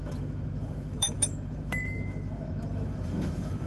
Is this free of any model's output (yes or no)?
no